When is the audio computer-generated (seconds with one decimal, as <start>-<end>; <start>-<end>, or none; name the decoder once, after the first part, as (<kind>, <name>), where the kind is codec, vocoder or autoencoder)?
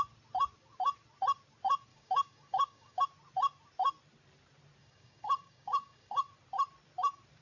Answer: 1.9-3.0 (codec, DAC); 4.8-6.2